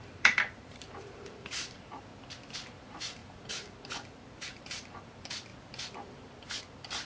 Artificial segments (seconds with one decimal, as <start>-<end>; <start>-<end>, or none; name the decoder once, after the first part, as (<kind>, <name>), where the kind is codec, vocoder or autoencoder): 0.0-2.1 (vocoder, BigVGAN v2); 2.8-5.5; 6.6-7.0